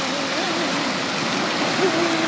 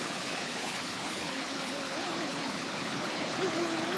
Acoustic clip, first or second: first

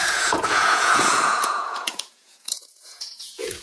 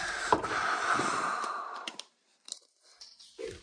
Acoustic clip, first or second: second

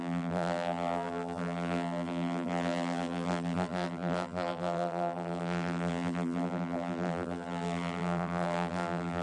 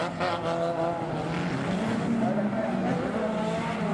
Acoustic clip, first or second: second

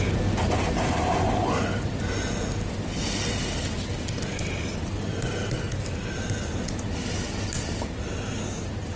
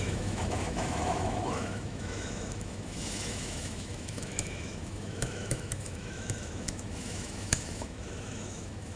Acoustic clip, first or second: first